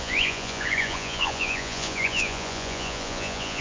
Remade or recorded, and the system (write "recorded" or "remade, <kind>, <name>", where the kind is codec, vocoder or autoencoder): remade, vocoder, Vocos